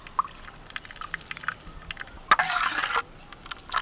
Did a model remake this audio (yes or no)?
no